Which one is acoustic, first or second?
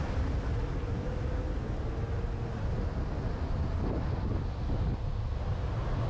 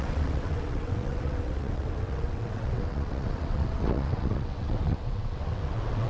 first